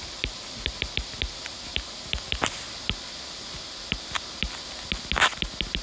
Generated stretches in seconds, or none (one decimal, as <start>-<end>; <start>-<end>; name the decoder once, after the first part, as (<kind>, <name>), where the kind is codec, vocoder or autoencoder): 1.7-2.3 (vocoder, BigVGAN v2)